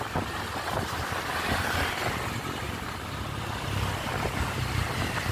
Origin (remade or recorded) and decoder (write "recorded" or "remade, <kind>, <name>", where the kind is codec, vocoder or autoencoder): recorded